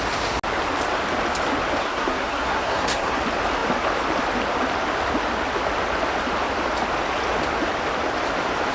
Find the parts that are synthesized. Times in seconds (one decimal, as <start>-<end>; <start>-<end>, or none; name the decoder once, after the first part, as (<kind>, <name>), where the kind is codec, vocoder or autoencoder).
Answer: 1.8-3.2 (codec, SNAC)